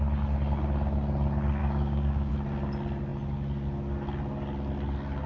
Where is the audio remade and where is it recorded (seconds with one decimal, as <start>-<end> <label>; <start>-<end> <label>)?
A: 0.0-1.6 recorded; 1.6-2.3 remade; 2.3-5.3 recorded